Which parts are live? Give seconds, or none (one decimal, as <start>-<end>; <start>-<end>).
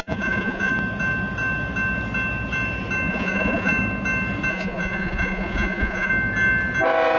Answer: 0.7-3.1; 3.7-4.5; 6.1-7.2